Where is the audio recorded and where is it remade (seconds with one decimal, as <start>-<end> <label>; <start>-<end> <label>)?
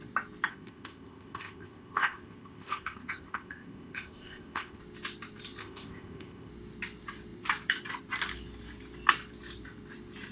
0.0-0.5 recorded; 0.5-4.8 remade; 4.8-5.6 recorded; 5.6-6.5 remade; 6.5-10.3 recorded